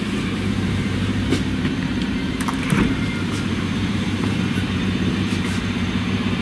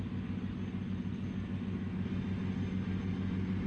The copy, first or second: first